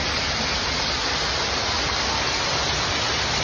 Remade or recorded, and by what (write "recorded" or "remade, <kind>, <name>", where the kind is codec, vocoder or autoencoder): recorded